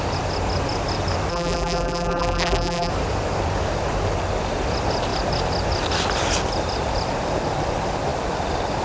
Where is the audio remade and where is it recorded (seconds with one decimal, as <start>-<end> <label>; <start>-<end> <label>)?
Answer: 0.0-1.3 recorded; 1.3-2.9 remade; 2.9-8.8 recorded